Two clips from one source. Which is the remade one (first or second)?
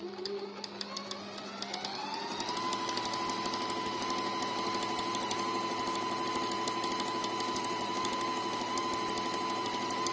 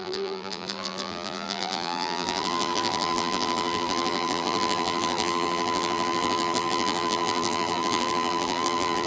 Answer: second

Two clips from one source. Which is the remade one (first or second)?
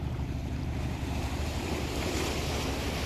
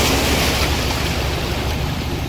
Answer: first